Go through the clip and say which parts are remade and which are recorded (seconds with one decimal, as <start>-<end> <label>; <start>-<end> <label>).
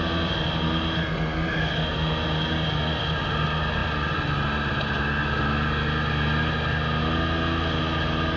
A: 0.0-8.4 recorded